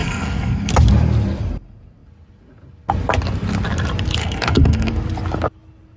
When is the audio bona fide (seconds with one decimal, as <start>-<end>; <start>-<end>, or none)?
0.7-4.2; 4.9-6.0